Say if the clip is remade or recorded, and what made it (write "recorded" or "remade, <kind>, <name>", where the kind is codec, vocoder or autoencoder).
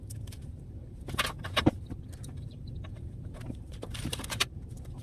remade, vocoder, BigVGAN v2